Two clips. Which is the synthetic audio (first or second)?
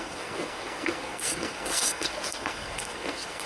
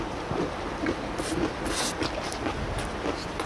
first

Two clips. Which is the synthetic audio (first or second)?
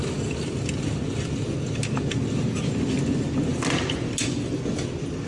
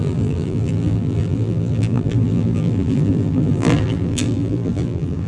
second